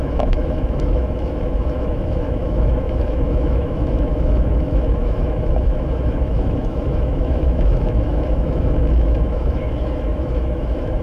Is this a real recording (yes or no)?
no